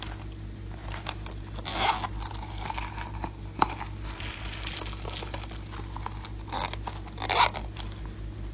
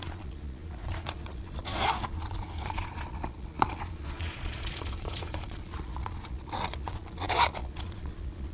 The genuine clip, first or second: first